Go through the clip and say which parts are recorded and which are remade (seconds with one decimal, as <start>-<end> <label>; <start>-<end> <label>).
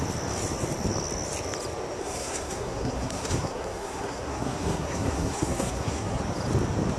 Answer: 0.0-2.0 recorded; 2.0-6.2 remade; 6.2-7.0 recorded